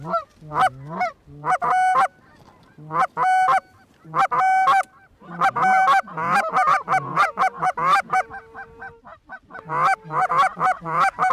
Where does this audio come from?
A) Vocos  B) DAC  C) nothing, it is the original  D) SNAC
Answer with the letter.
C